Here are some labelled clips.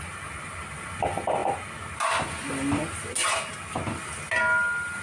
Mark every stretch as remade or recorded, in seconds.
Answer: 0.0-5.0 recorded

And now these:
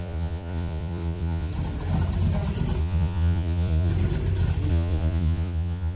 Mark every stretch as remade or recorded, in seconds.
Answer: 0.0-1.5 remade; 1.5-2.8 recorded; 2.8-3.9 remade; 3.9-4.7 recorded; 4.7-6.0 remade

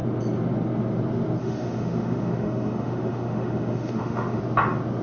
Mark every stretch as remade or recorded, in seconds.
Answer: 0.0-1.4 recorded; 1.4-4.4 remade; 4.4-5.0 recorded